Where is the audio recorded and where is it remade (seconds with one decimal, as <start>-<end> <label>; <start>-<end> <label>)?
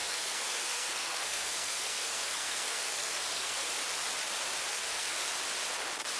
0.0-3.8 remade; 3.8-4.7 recorded; 4.7-5.3 remade; 5.3-6.2 recorded